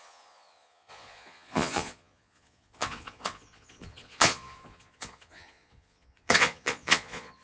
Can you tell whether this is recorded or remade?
remade